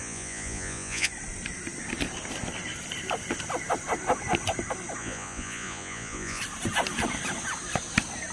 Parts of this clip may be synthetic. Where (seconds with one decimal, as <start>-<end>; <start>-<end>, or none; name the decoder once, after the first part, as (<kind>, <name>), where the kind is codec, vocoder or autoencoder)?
0.0-1.1 (vocoder, Vocos); 5.0-6.4